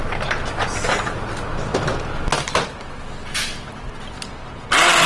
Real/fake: real